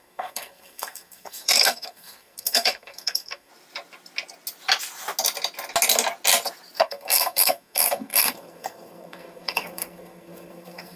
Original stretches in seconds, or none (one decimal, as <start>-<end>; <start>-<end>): 3.5-6.8